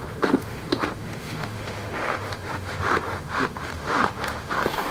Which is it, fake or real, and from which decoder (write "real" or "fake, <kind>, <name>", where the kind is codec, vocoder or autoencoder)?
fake, autoencoder, DAC-VAE